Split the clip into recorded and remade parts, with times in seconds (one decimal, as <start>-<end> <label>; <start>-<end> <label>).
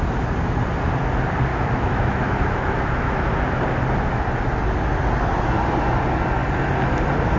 0.0-1.5 recorded; 1.5-3.2 remade; 3.2-7.4 recorded